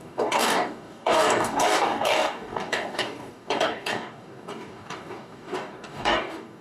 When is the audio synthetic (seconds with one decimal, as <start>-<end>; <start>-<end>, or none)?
0.0-6.6

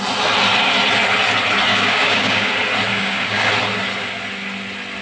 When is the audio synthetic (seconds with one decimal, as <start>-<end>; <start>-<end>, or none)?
1.7-2.5; 2.9-3.5

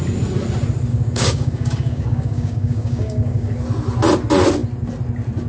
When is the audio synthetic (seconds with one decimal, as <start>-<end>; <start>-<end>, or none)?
0.9-3.5

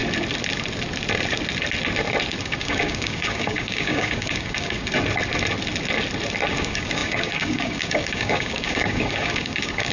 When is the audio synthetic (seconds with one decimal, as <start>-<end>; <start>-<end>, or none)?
2.4-4.9; 6.5-9.9

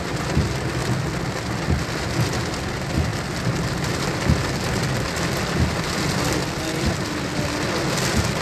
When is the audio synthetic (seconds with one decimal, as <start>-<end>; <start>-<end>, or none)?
none

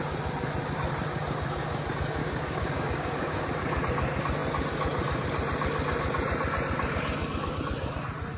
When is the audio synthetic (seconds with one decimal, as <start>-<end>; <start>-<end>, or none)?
2.2-3.8

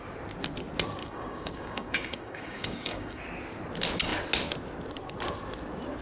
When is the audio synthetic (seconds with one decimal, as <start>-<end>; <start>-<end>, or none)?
1.0-3.2

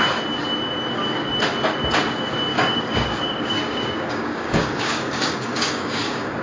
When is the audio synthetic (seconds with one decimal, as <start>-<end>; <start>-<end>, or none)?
2.5-6.4